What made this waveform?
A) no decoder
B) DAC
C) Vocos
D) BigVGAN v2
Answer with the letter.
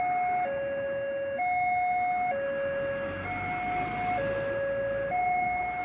A